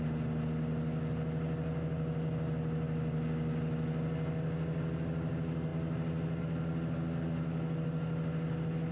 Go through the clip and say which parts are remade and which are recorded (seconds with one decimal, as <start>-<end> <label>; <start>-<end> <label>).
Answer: 0.0-8.9 recorded